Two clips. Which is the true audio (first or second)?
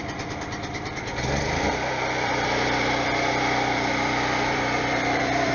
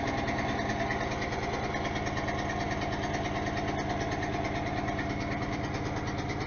second